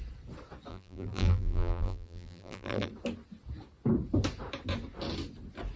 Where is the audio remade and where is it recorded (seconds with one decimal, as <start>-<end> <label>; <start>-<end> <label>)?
0.0-0.7 recorded; 0.7-2.9 remade; 2.9-5.8 recorded